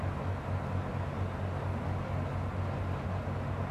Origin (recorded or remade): recorded